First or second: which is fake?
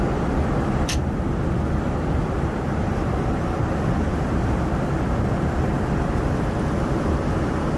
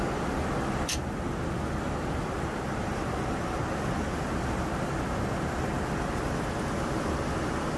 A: first